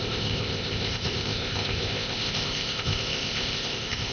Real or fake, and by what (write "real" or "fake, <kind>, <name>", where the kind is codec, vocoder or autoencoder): fake, codec, ZipCodec